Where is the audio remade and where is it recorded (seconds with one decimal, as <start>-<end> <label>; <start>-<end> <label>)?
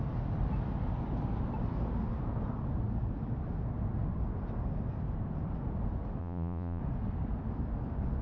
0.0-6.2 recorded; 6.2-6.8 remade; 6.8-8.2 recorded